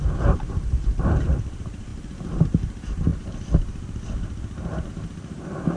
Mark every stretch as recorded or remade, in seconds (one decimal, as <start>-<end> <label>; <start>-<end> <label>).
0.0-3.1 remade; 3.1-4.9 recorded; 4.9-5.8 remade

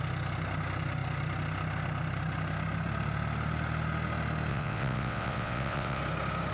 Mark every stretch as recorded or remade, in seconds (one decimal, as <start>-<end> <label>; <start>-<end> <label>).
0.0-4.5 recorded; 4.5-6.0 remade; 6.0-6.5 recorded

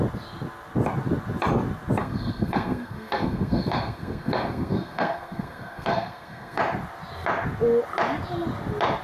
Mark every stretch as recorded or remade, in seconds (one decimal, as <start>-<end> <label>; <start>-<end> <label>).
0.0-2.0 recorded; 2.0-6.6 remade; 6.6-9.0 recorded

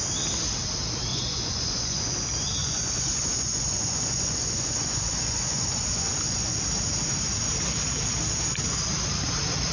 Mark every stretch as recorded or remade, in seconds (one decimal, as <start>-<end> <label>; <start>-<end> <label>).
0.0-1.1 recorded; 1.1-2.1 remade; 2.1-2.6 recorded; 2.6-6.6 remade; 6.6-9.7 recorded

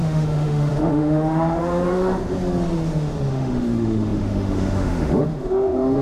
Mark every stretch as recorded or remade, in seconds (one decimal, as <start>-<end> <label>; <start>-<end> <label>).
0.0-2.2 remade; 2.2-3.3 recorded; 3.3-6.0 remade

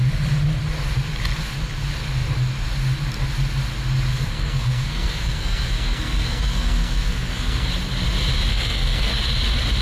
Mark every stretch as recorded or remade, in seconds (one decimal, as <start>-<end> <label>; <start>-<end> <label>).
0.0-4.1 recorded; 4.1-7.7 remade; 7.7-8.5 recorded; 8.5-9.2 remade; 9.2-9.8 recorded